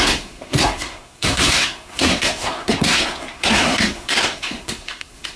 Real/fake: fake